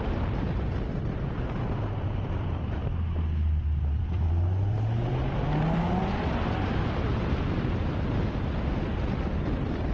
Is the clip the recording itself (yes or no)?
yes